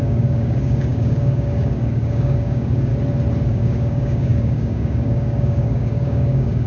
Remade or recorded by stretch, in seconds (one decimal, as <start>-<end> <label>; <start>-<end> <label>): 0.0-2.9 remade; 2.9-3.5 recorded; 3.5-6.7 remade